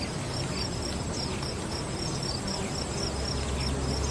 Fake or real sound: real